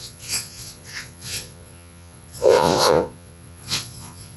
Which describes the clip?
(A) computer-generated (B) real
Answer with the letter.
A